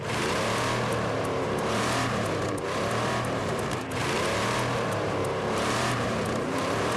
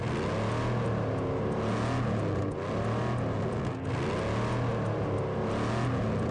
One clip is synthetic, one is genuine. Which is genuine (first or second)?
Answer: second